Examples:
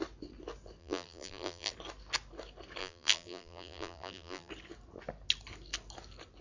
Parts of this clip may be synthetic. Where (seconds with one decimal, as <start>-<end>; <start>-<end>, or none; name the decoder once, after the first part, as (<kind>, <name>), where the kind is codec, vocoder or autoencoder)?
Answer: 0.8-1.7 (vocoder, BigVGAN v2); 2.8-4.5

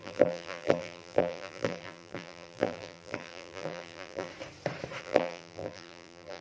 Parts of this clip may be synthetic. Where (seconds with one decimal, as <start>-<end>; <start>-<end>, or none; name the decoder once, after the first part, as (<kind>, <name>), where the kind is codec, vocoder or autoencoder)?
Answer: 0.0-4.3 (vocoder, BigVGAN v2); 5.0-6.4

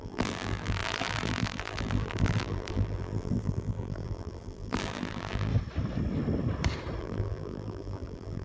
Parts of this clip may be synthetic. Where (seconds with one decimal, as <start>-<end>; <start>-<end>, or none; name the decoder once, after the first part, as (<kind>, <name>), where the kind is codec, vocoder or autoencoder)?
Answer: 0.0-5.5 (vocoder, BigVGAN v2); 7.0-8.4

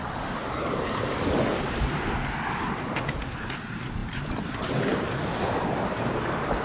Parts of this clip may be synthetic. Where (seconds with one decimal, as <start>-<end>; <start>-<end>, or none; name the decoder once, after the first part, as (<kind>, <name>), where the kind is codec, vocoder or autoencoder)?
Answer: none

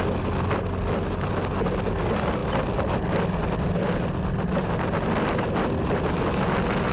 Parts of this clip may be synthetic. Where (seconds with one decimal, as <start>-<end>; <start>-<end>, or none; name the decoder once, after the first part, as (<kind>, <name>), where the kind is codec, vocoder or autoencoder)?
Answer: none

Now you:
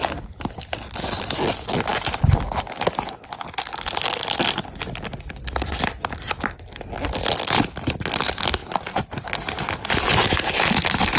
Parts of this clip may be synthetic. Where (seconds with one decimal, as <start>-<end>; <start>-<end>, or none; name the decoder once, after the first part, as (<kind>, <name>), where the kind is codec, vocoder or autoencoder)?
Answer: none

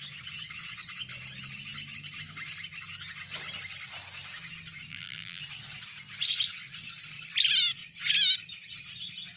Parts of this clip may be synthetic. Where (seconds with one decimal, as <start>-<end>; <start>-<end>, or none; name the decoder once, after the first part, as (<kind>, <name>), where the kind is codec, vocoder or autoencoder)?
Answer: 4.9-5.4 (vocoder, BigVGAN v2)

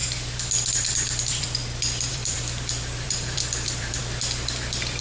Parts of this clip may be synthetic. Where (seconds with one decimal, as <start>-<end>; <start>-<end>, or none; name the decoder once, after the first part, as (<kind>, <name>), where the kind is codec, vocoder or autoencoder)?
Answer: 0.7-1.6 (vocoder, BigVGAN v2); 2.1-4.0